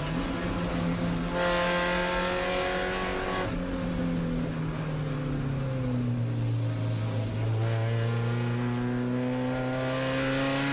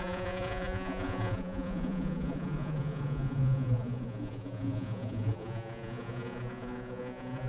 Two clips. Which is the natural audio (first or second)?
first